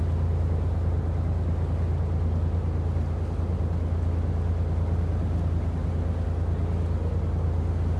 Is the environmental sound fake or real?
real